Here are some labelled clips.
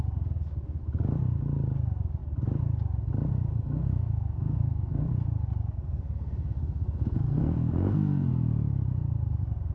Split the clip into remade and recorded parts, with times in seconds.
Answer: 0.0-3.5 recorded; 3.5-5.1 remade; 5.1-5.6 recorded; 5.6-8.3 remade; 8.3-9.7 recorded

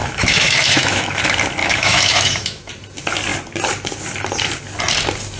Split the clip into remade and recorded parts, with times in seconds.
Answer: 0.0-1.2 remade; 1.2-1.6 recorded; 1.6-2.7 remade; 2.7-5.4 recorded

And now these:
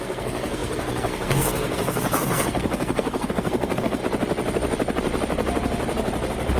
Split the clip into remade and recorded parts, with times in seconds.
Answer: 0.0-4.0 remade; 4.0-6.6 recorded

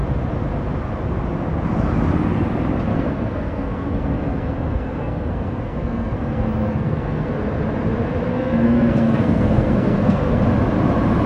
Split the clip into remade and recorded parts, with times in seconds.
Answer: 0.0-2.9 recorded; 2.9-7.3 remade; 7.3-8.3 recorded; 8.3-10.4 remade; 10.4-11.3 recorded

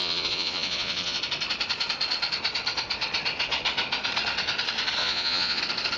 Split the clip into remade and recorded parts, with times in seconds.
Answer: 0.0-1.2 remade; 1.2-5.0 recorded; 5.0-5.6 remade; 5.6-6.0 recorded